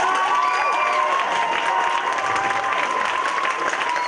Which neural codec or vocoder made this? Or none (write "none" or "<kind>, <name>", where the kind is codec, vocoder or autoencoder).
none